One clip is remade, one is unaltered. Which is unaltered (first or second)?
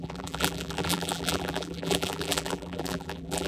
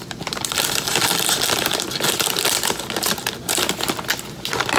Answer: second